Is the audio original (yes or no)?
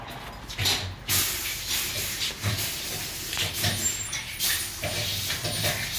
yes